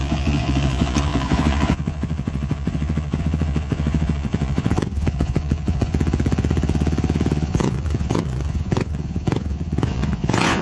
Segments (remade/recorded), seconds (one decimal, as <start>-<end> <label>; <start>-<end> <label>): 0.0-10.6 remade